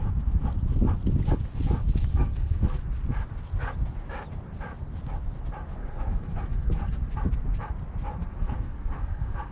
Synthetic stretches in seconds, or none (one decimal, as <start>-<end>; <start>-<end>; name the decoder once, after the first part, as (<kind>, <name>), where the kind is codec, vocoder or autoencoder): 2.1-2.8 (codec, SNAC); 5.8-7.0; 8.2-9.5